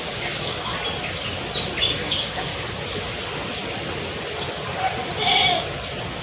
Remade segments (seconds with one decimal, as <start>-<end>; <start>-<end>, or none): 0.0-0.7; 1.8-2.5